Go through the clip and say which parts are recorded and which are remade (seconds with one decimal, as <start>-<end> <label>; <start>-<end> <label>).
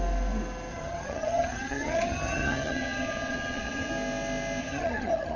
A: 0.0-0.7 recorded; 0.7-3.9 remade; 3.9-4.6 recorded; 4.6-5.4 remade